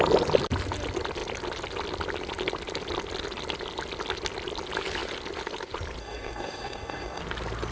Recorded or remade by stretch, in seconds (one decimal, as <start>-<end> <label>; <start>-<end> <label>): 0.0-6.0 recorded; 6.0-7.2 remade; 7.2-7.7 recorded